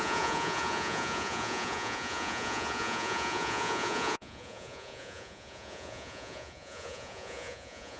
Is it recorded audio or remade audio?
remade